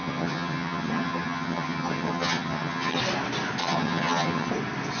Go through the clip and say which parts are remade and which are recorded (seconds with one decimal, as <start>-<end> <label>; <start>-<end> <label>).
0.0-3.0 remade; 3.0-3.6 recorded; 3.6-4.5 remade; 4.5-5.0 recorded